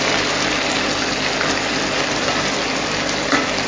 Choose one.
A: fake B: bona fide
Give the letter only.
B